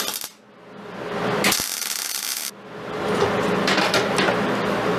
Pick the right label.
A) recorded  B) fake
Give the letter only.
A